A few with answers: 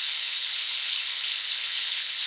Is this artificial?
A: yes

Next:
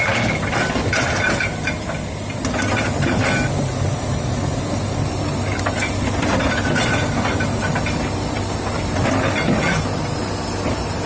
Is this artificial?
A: no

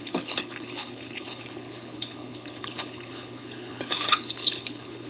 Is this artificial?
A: yes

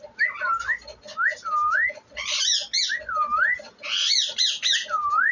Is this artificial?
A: no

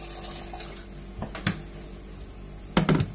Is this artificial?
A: no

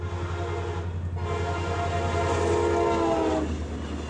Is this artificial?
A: no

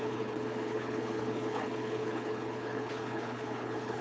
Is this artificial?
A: yes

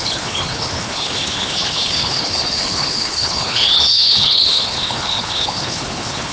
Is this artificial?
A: yes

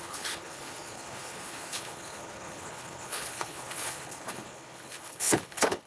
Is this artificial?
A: yes